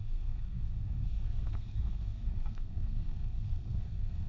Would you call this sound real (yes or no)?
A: no